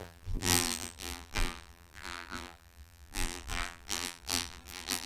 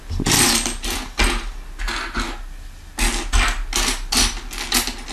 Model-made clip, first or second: first